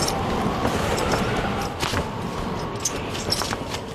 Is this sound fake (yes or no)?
no